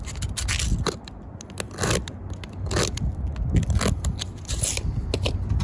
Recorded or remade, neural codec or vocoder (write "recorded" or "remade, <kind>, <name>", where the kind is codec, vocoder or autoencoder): recorded